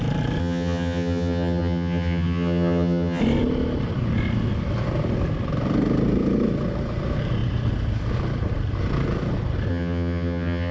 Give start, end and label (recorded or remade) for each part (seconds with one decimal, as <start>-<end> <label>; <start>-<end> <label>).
0.0-0.4 recorded; 0.4-3.2 remade; 3.2-9.7 recorded; 9.7-10.7 remade